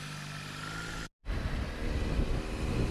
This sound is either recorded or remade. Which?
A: recorded